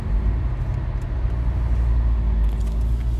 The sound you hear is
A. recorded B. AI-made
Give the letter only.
A